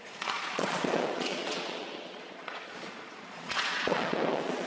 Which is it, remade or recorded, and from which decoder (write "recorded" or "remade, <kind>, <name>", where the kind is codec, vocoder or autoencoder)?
remade, vocoder, Vocos